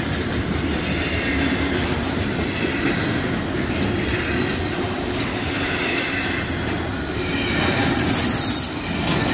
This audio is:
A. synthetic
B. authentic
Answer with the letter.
B